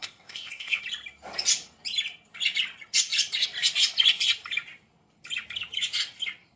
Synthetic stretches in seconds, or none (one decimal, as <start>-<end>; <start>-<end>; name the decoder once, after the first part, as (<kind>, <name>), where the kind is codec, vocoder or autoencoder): 0.0-0.8 (codec, ZipCodec)